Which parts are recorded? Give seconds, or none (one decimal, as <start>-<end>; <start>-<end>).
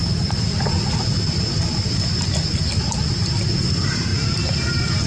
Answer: 0.0-5.1